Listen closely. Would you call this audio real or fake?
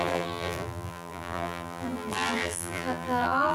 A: fake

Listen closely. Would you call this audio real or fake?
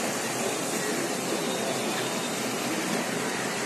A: fake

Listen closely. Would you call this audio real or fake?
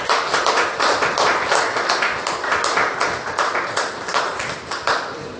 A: real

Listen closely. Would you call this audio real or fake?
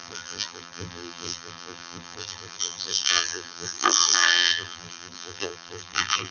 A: fake